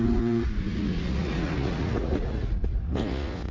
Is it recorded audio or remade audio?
remade